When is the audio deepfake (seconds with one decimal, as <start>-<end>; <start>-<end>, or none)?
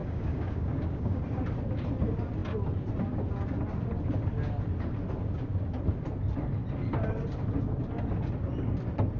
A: 0.0-1.2